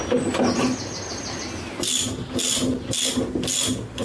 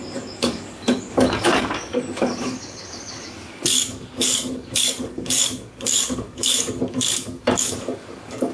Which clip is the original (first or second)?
first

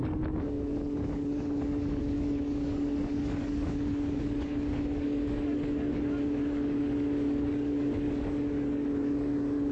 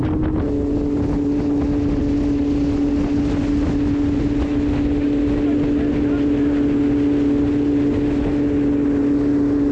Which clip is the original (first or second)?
second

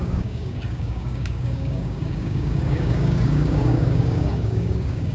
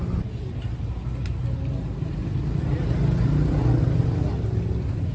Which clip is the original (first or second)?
second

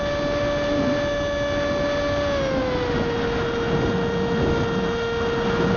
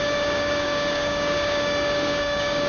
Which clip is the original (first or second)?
first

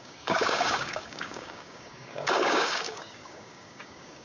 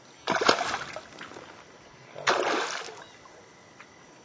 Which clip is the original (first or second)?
second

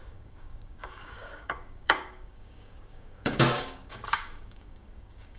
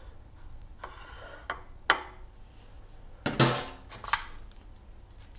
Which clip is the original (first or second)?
second